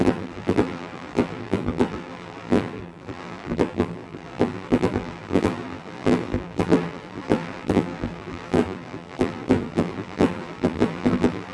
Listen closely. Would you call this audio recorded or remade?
remade